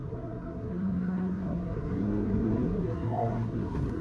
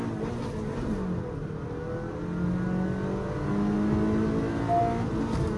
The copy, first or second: first